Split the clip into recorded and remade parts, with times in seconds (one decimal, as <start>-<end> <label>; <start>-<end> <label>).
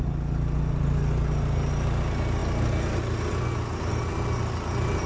0.0-5.1 recorded